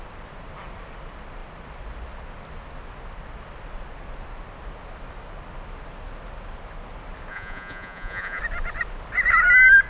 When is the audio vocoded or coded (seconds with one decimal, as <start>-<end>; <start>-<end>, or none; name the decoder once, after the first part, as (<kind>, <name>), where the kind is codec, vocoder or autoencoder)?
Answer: 7.3-8.4 (vocoder, Vocos)